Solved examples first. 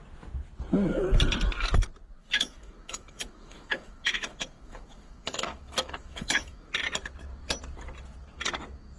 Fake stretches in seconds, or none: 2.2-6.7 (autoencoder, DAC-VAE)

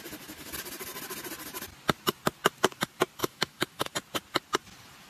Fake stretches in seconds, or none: 3.2-3.9 (autoencoder, DAC-VAE)